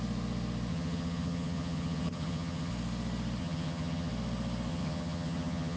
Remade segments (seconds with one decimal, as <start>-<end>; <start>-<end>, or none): 0.7-2.7; 3.4-4.1; 4.7-5.8